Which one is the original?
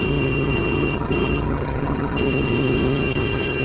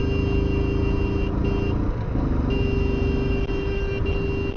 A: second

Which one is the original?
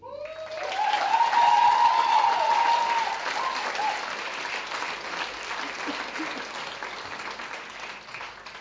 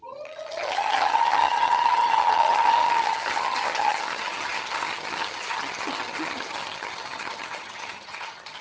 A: first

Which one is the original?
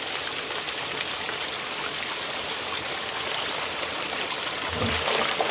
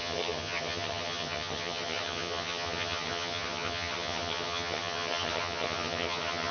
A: first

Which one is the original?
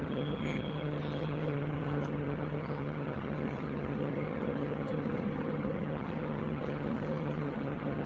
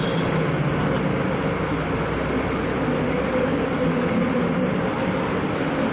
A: second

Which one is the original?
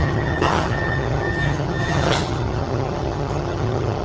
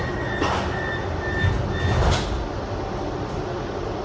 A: second